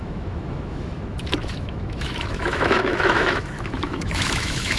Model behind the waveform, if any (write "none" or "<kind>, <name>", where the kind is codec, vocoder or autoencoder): autoencoder, DAC-VAE